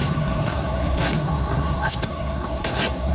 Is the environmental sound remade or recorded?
remade